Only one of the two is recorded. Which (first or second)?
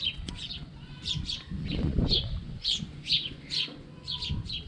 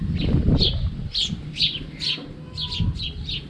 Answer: second